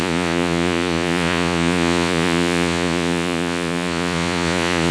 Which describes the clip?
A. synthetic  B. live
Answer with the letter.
A